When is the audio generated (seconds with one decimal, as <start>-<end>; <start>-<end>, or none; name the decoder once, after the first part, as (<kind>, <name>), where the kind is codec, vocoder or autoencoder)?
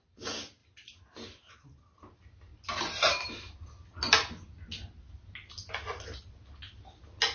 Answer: none